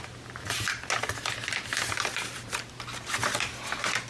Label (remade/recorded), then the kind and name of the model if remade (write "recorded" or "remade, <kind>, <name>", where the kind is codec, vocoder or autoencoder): recorded